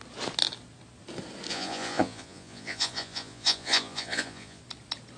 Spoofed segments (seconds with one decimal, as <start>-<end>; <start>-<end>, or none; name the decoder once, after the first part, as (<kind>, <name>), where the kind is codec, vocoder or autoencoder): 1.5-4.6 (vocoder, Vocos)